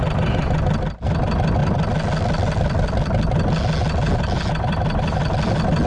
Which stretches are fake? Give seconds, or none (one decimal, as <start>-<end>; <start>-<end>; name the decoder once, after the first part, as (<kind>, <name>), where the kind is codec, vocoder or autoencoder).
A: none